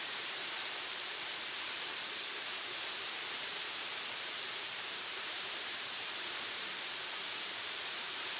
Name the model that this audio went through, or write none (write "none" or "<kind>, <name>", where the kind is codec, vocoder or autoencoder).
vocoder, BigVGAN v2